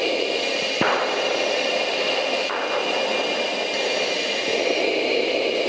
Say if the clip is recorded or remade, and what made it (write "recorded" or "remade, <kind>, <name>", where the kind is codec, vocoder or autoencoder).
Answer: recorded